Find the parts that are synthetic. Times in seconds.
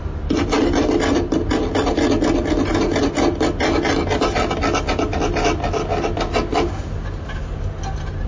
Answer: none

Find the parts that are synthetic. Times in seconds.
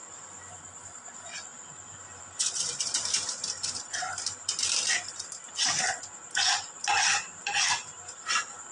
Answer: 1.5-5.5 (vocoder, BigVGAN v2)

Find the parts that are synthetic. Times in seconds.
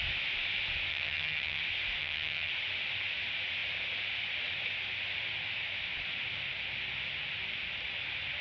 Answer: 0.9-1.6 (vocoder, HiFi-GAN); 2.0-2.5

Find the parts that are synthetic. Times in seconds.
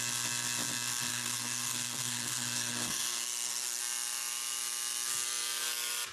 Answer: 1.1-3.8 (codec, SNAC)